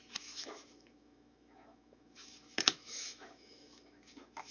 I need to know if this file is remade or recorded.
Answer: remade